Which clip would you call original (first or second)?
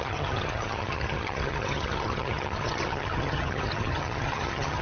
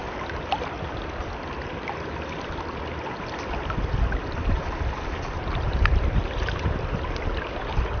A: second